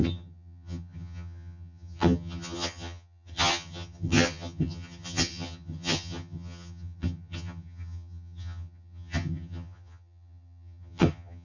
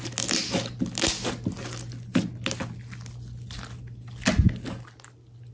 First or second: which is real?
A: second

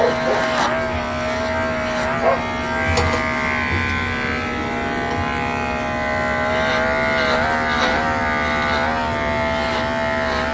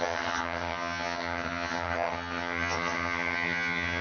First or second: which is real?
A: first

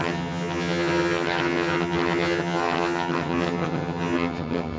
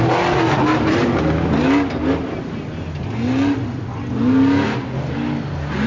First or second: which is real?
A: second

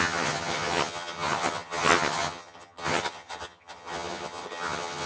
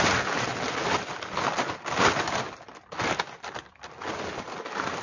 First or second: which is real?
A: second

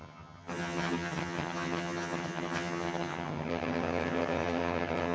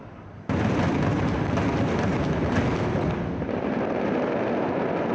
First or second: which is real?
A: second